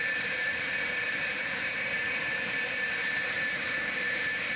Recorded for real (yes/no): no